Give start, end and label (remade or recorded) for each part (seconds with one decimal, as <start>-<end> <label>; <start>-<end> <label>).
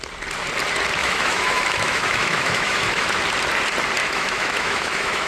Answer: 0.0-1.0 recorded; 1.0-3.2 remade; 3.2-4.0 recorded; 4.0-5.3 remade